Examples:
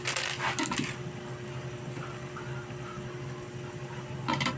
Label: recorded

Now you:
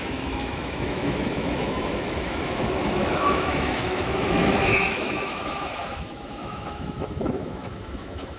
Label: remade